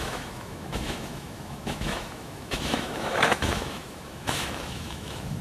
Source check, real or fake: fake